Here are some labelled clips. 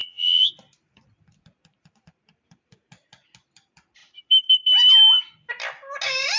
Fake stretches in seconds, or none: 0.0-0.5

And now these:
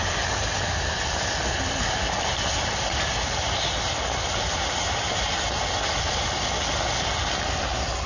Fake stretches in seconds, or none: none

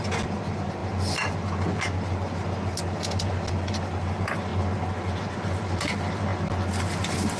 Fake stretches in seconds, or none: none

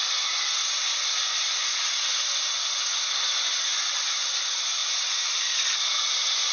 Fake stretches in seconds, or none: none

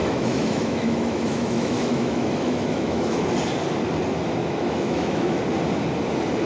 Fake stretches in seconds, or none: 0.0-3.2; 4.4-5.4

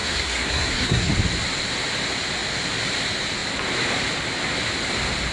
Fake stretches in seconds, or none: 0.0-1.1

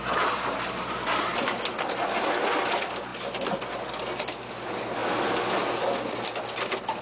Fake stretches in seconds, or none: none